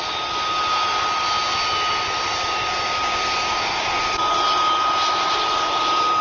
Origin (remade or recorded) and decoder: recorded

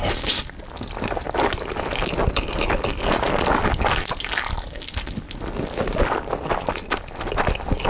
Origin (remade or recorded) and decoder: recorded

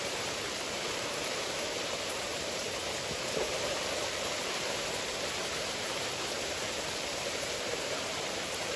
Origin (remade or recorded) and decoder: remade, vocoder, BigVGAN v2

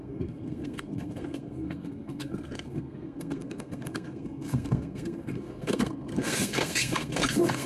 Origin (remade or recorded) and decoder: remade, codec, SNAC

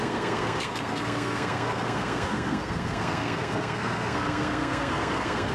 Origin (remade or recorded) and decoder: remade, codec, SNAC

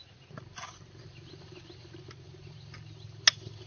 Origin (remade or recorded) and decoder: recorded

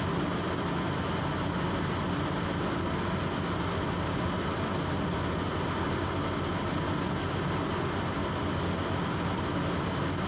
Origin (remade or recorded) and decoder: recorded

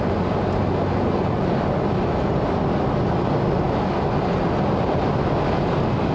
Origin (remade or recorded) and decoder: recorded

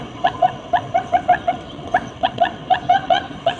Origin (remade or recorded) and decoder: remade, vocoder, WaveNeXt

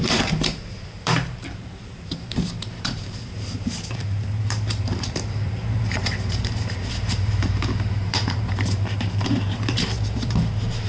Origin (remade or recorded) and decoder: remade, vocoder, BigVGAN v2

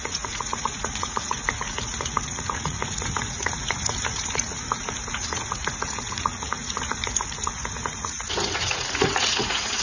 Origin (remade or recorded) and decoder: remade, vocoder, Vocos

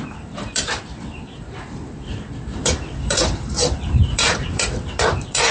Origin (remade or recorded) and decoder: remade, vocoder, BigVGAN v2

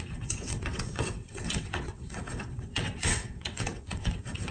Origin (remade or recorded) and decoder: remade, vocoder, WaveNeXt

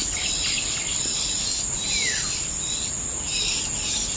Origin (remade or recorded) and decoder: recorded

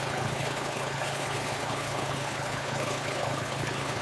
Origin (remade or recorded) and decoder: remade, codec, HILCodec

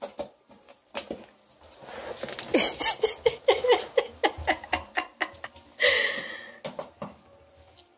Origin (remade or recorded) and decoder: recorded